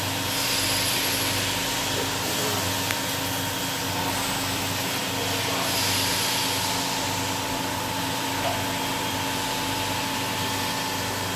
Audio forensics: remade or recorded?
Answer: recorded